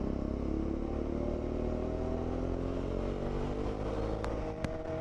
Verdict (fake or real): real